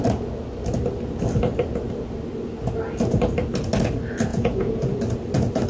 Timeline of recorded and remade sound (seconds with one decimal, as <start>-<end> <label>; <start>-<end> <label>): 0.0-4.3 recorded; 4.3-4.9 remade; 4.9-5.7 recorded